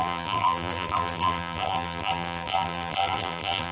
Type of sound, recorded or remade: remade